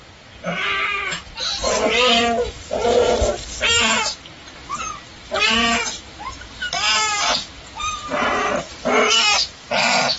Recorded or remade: recorded